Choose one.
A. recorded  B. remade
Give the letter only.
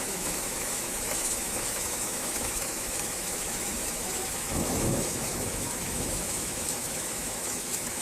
B